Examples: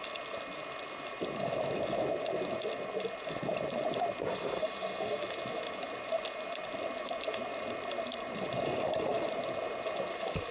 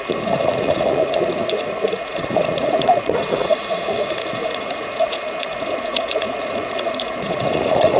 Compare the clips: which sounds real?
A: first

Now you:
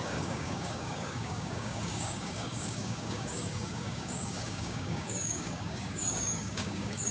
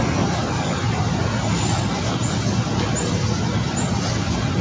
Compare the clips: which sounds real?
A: second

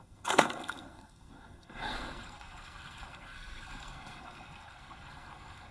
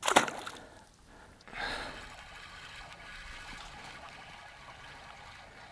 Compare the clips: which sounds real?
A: second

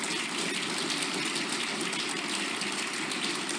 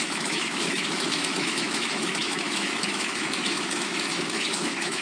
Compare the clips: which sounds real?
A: first